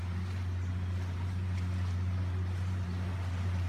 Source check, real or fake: real